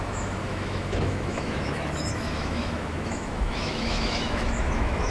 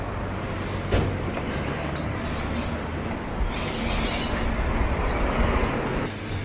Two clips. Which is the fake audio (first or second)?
first